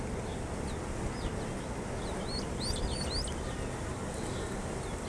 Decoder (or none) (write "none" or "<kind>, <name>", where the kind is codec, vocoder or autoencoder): none